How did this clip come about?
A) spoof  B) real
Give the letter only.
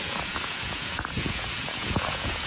A